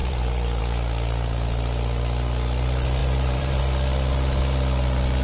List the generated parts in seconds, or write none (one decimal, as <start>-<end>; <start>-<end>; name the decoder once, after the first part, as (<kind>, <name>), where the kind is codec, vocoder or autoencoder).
0.0-0.6 (vocoder, BigVGAN v2); 3.0-3.6